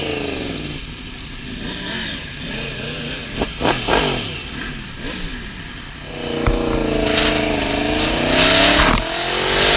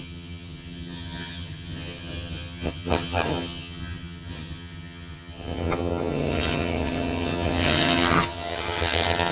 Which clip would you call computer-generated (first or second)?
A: second